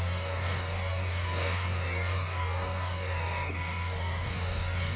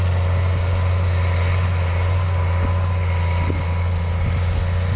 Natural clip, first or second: second